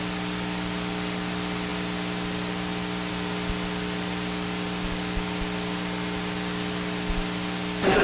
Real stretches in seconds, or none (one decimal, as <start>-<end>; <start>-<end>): 0.0-8.0